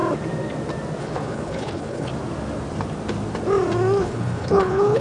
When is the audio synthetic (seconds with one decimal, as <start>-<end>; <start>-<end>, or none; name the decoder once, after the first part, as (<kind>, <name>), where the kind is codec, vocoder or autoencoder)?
1.0-2.1 (codec, HILCodec); 4.0-5.0